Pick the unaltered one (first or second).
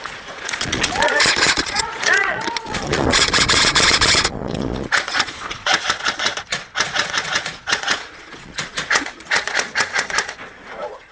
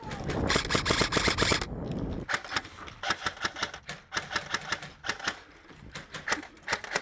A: second